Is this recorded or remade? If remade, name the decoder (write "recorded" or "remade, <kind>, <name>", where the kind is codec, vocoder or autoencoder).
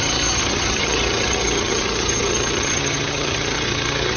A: remade, vocoder, HiFi-GAN